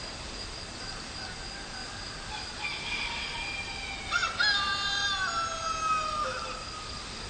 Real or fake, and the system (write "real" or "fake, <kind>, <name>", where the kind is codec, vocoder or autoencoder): real